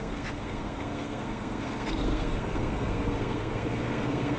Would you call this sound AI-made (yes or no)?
yes